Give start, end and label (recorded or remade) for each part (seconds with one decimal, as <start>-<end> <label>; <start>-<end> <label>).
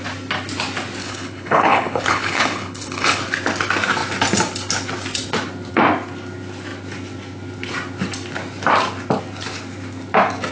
0.0-1.0 recorded; 1.0-3.2 remade; 3.2-10.5 recorded